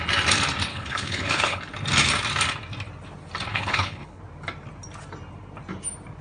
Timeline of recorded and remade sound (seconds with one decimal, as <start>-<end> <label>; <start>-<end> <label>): 0.0-0.7 recorded; 0.7-1.6 remade; 1.6-3.5 recorded; 3.5-4.2 remade; 4.2-6.2 recorded